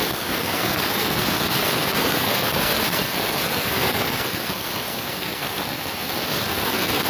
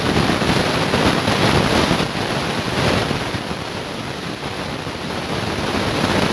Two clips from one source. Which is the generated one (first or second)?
first